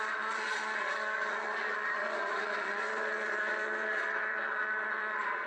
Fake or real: fake